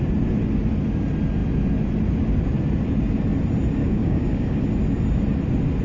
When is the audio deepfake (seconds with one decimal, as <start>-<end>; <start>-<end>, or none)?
3.8-4.6